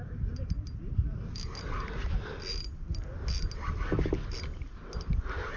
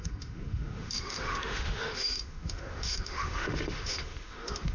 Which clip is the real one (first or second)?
first